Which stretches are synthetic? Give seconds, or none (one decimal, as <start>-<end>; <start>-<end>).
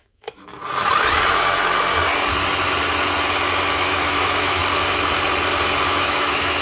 0.0-0.5; 3.7-4.6; 5.9-6.6